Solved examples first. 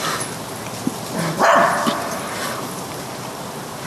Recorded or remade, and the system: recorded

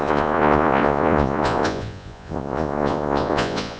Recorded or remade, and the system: remade, vocoder, Vocos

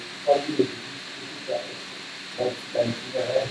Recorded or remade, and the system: recorded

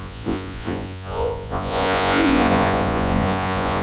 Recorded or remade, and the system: remade, vocoder, Vocos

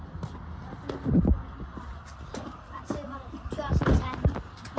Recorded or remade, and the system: recorded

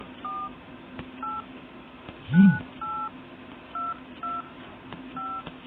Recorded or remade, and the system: recorded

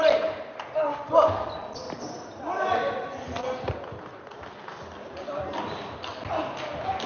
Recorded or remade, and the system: recorded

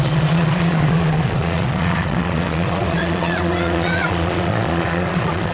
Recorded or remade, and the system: remade, vocoder, Vocos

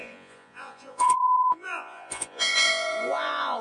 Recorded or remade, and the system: remade, vocoder, Vocos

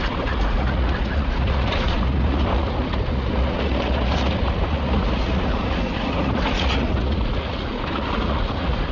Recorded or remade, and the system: remade, vocoder, Vocos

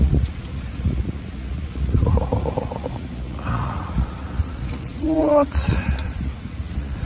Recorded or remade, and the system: remade, vocoder, Vocos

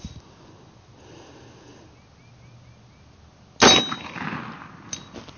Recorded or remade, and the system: recorded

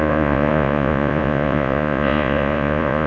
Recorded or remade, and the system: remade, vocoder, Vocos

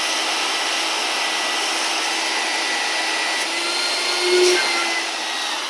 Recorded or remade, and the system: recorded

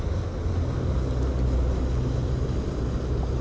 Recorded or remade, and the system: recorded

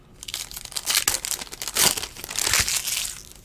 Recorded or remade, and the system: recorded